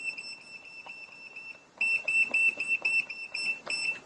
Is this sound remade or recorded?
remade